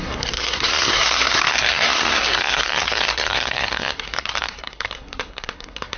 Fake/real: fake